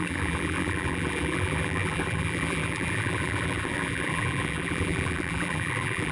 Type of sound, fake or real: fake